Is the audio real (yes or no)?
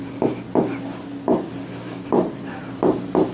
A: yes